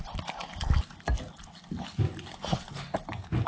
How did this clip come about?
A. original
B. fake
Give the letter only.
A